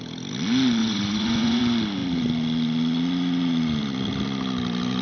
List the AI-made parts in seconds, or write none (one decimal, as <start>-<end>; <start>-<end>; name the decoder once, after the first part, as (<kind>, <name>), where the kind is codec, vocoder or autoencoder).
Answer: 0.8-1.6 (vocoder, Vocos)